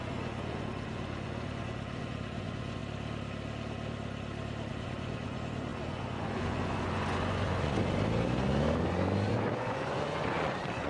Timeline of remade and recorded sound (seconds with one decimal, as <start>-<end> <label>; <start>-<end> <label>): 0.0-2.8 remade; 2.8-4.7 recorded; 4.7-7.8 remade; 7.8-9.3 recorded; 9.3-10.9 remade